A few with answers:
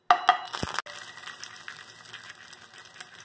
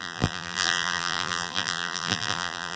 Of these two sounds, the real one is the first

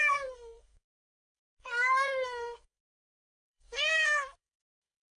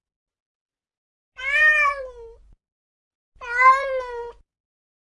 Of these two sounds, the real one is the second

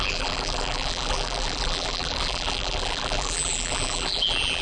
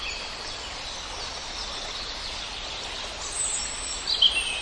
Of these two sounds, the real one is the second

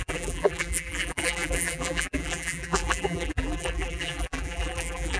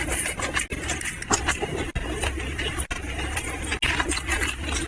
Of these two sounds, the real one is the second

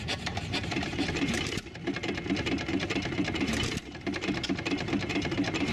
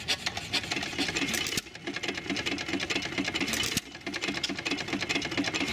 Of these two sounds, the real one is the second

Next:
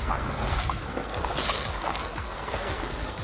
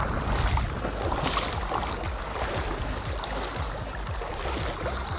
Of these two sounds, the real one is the second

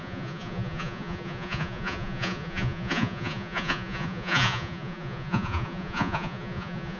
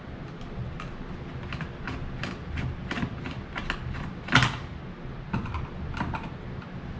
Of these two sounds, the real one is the second